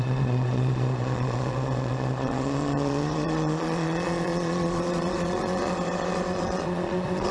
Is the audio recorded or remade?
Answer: remade